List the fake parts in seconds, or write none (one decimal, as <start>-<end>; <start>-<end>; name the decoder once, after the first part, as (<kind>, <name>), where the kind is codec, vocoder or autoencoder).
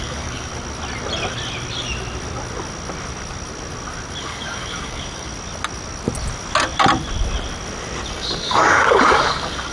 0.0-0.5 (codec, DAC); 4.2-5.3; 8.1-9.7